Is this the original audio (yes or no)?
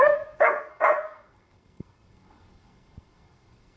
no